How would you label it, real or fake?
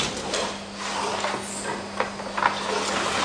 real